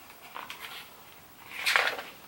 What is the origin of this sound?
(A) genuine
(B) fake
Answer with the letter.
A